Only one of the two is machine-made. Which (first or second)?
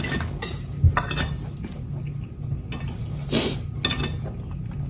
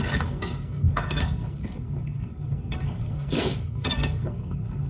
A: second